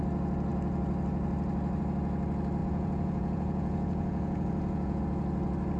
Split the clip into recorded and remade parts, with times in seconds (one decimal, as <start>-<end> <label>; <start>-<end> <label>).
0.0-2.6 recorded; 2.6-5.0 remade; 5.0-5.8 recorded